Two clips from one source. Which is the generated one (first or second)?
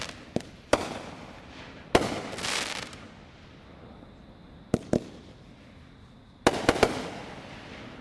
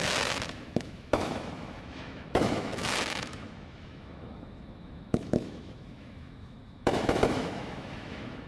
second